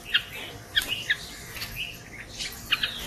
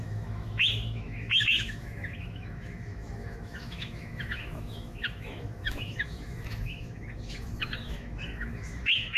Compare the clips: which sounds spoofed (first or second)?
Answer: second